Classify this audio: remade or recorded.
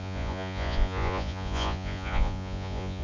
remade